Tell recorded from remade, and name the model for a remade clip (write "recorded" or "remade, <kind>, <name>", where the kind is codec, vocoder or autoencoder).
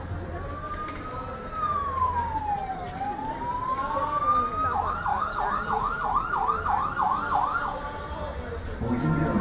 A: recorded